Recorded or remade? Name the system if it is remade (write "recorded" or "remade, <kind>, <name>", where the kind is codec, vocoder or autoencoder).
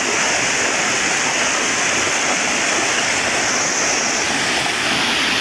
recorded